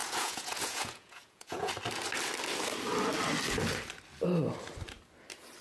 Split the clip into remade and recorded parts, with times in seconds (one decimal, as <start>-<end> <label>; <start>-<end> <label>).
0.0-1.7 remade; 1.7-5.6 recorded